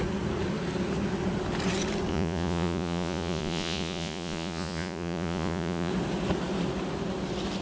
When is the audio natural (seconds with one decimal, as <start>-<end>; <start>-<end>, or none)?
0.0-2.1; 5.9-7.6